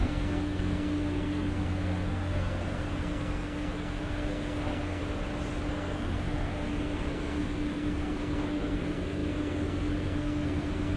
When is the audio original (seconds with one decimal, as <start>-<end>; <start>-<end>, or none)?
5.0-5.7